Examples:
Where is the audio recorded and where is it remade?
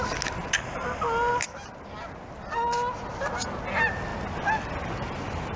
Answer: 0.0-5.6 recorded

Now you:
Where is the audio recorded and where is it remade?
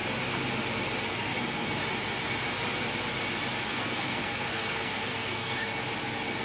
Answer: 0.0-1.1 recorded; 1.1-1.8 remade; 1.8-3.7 recorded; 3.7-5.7 remade; 5.7-6.4 recorded